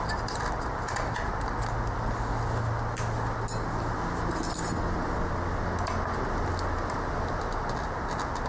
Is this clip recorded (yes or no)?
yes